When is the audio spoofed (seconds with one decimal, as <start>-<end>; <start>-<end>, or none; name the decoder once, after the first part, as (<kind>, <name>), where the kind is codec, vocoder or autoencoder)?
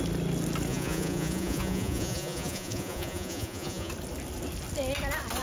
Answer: 0.7-3.9 (vocoder, Vocos)